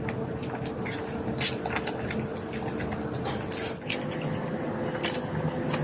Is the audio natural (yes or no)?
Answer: no